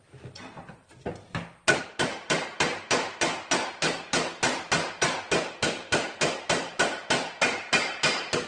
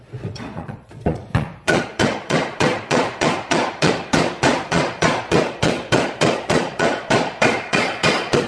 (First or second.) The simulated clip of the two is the second